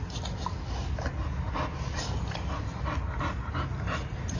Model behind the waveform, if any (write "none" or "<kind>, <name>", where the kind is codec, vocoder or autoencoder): none